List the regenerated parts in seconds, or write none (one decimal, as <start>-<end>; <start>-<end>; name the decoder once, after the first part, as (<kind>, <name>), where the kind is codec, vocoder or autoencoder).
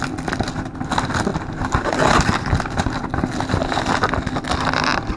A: none